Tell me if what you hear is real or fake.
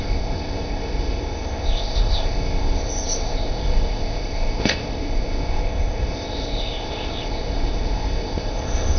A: fake